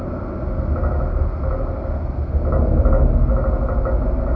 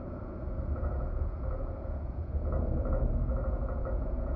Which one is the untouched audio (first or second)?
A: first